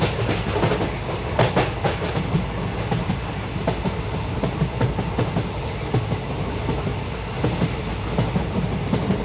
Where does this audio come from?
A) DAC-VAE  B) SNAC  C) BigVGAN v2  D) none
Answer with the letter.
D